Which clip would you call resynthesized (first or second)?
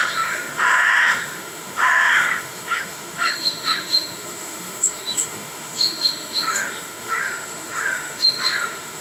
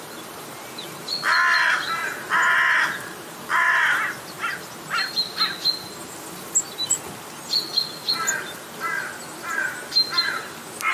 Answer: first